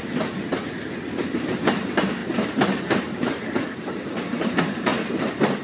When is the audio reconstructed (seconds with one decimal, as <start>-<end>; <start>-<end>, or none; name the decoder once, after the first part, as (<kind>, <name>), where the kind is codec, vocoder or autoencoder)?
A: 0.0-0.5 (vocoder, BigVGAN v2); 1.2-4.9